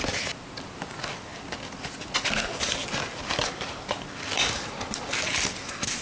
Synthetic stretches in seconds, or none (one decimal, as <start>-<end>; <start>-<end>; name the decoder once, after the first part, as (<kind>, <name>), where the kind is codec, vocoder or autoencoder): none